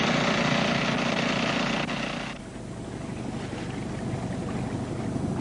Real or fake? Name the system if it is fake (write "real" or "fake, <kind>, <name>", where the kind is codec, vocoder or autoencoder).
real